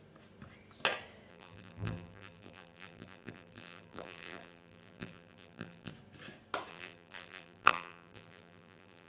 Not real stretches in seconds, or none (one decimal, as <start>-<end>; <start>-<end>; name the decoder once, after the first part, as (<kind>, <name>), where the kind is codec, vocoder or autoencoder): 1.3-5.9 (vocoder, BigVGAN v2); 6.7-9.1